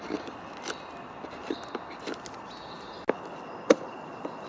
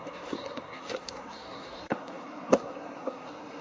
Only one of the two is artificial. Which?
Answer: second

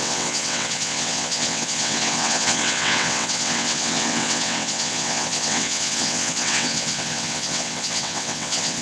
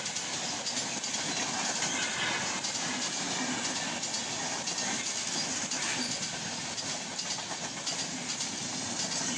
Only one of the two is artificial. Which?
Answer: first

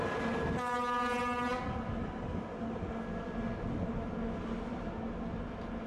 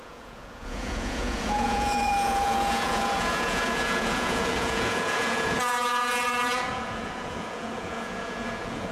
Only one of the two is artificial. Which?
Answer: second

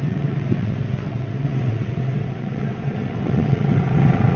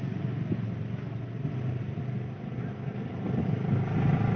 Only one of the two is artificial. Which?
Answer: first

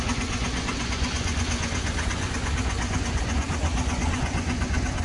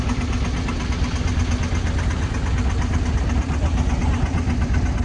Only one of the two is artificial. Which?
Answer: first